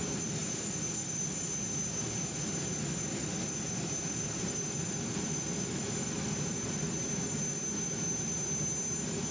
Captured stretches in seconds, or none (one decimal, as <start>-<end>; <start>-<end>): 0.0-9.3